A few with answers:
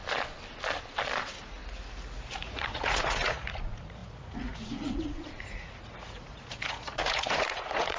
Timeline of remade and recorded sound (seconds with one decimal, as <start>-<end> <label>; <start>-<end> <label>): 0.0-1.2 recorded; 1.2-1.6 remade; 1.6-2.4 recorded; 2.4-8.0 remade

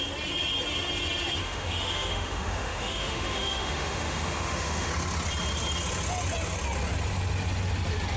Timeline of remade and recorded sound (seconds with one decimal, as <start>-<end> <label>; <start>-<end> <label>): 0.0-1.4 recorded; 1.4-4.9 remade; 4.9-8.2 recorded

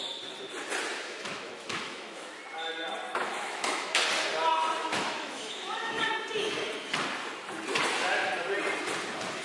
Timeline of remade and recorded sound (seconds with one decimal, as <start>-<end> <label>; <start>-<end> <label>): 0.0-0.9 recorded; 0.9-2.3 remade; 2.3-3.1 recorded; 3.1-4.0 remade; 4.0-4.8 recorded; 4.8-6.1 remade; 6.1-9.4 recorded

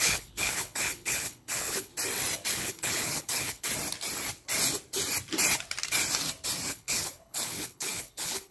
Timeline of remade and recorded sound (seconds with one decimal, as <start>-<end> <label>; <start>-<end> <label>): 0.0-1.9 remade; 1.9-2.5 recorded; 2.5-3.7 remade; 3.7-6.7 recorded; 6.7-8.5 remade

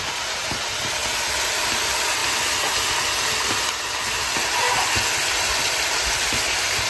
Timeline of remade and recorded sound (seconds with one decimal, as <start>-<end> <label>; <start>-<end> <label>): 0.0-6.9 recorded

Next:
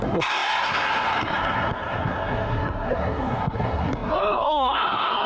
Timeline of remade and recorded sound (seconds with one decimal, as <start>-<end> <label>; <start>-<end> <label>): 0.0-5.3 remade

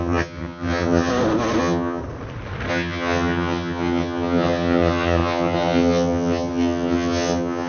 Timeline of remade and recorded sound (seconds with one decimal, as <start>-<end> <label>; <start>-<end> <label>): 0.0-1.1 remade; 1.1-1.6 recorded; 1.6-2.0 remade; 2.0-2.7 recorded; 2.7-7.7 remade

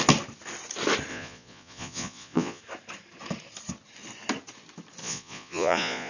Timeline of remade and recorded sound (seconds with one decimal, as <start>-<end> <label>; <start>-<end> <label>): 0.0-1.1 recorded; 1.1-2.6 remade; 2.6-5.0 recorded; 5.0-6.1 remade